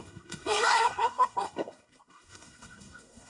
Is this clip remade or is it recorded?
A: remade